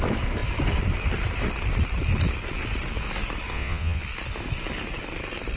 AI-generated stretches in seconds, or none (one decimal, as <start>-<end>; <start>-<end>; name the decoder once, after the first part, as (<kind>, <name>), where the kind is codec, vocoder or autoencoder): 3.5-4.0 (vocoder, Vocos)